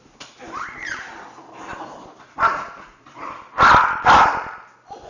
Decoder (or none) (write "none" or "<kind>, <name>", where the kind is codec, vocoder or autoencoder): none